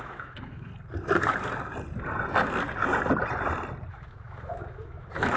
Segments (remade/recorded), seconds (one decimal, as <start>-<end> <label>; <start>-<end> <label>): 0.0-0.7 remade; 0.7-3.9 recorded; 3.9-5.4 remade